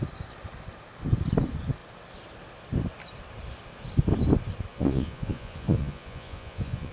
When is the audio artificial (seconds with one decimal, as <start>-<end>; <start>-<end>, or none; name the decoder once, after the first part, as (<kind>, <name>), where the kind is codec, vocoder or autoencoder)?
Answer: 4.7-6.9 (vocoder, Vocos)